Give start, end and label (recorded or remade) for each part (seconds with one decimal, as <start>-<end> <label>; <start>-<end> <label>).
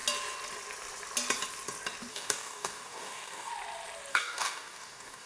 0.0-2.1 recorded; 2.1-3.5 remade; 3.5-4.1 recorded; 4.1-5.3 remade